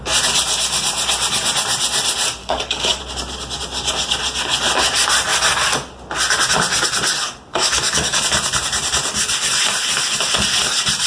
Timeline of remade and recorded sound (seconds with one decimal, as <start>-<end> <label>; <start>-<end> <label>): 0.0-2.4 recorded; 2.4-3.0 remade; 3.0-7.5 recorded; 7.5-8.2 remade; 8.2-11.1 recorded